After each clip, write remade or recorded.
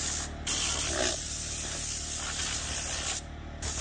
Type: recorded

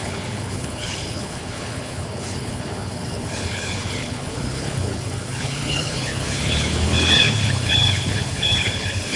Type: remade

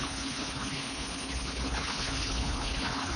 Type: remade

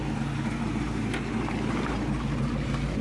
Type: recorded